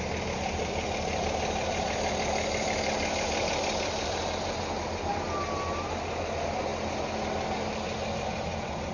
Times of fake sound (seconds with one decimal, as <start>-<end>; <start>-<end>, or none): none